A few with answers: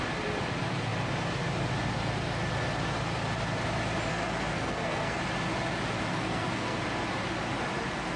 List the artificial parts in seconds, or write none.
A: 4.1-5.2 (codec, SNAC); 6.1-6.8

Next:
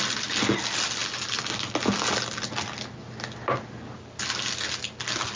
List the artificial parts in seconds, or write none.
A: none